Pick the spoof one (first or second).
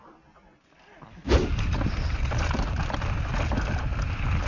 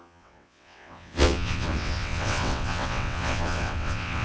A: second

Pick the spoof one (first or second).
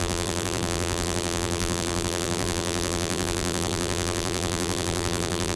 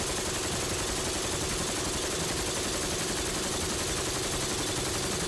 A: first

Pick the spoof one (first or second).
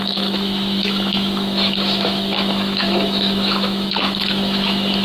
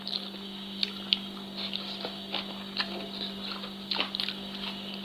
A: first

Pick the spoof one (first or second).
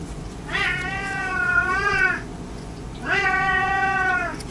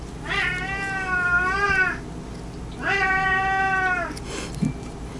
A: first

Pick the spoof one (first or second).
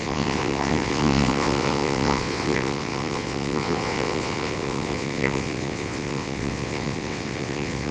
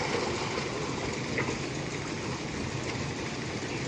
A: first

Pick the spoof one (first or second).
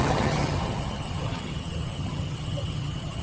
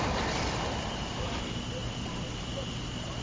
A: first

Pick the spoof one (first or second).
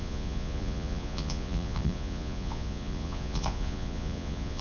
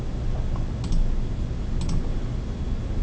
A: first